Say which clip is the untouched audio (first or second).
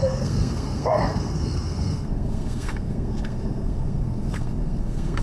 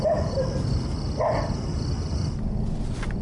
second